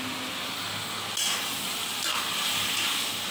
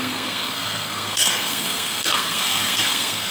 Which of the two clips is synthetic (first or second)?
second